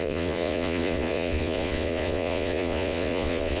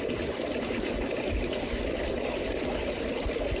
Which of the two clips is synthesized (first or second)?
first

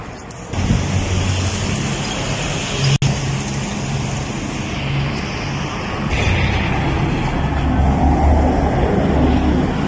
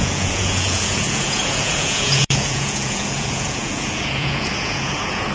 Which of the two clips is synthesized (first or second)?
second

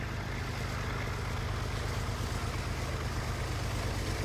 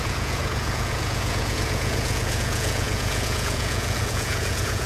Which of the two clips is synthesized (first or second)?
second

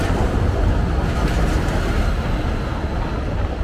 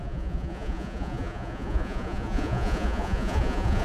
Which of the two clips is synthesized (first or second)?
second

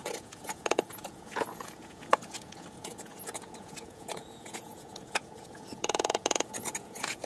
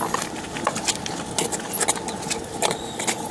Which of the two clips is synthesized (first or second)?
first